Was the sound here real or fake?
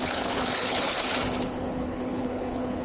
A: fake